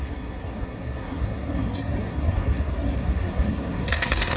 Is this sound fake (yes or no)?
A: yes